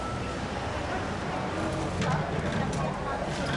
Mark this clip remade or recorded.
recorded